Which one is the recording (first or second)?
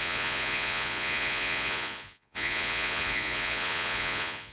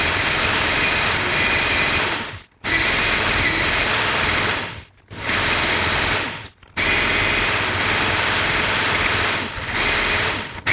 second